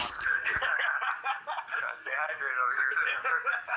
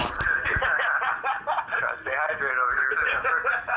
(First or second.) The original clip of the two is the second